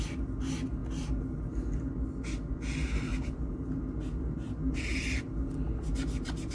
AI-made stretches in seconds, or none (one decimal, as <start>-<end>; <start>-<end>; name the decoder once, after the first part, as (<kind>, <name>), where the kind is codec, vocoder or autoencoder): none

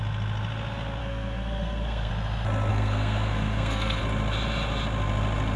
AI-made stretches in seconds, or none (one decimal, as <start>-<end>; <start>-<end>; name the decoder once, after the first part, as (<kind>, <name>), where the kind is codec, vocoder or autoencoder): 1.0-2.1 (codec, SNAC); 2.7-4.0